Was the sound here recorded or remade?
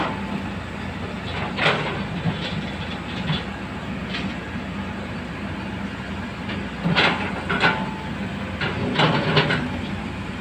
recorded